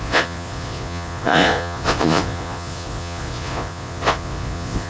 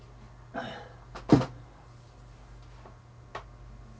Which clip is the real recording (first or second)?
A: second